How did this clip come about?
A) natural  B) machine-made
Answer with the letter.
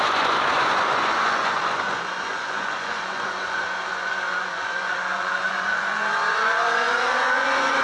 B